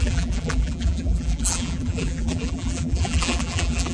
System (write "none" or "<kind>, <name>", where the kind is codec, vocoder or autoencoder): vocoder, BigVGAN v2